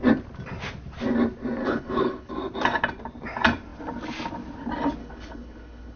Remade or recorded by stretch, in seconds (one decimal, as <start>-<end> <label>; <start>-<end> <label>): 0.0-1.6 recorded; 1.6-2.3 remade; 2.3-5.0 recorded; 5.0-6.0 remade